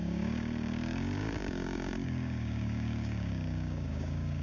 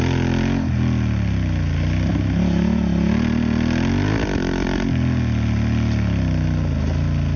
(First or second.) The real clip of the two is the second